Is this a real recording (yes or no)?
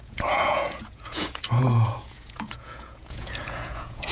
no